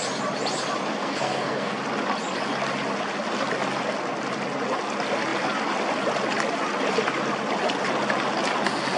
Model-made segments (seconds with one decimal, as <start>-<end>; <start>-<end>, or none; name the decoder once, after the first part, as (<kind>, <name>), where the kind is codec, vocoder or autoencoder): 1.0-1.8 (codec, SNAC)